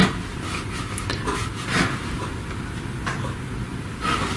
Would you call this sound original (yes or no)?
yes